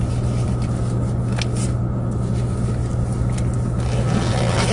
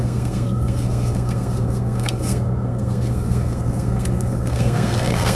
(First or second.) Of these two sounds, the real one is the first